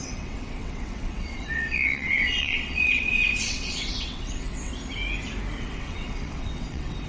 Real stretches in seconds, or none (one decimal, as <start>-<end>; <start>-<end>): 4.7-5.6